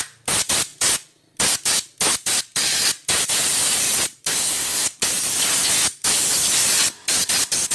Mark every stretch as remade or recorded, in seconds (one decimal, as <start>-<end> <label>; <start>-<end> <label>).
0.0-4.4 recorded; 4.4-5.0 remade; 5.0-7.7 recorded